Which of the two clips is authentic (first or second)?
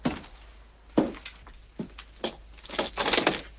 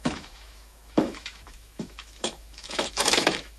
first